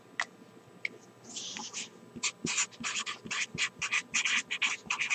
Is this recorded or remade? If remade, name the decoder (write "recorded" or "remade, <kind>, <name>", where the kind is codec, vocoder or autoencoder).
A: recorded